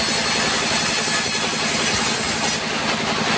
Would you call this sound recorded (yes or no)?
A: yes